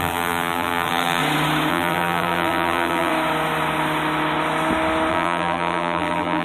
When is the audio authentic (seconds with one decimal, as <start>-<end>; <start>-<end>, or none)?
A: 1.2-1.7; 3.1-5.1